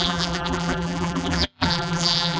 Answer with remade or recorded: remade